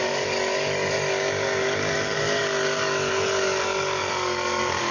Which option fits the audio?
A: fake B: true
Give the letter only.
A